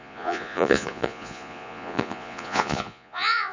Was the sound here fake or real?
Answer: fake